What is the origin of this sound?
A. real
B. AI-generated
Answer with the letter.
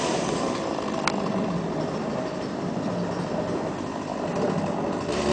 A